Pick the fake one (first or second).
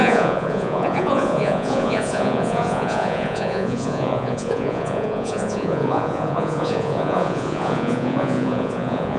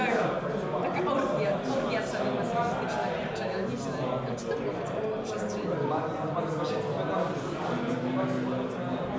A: first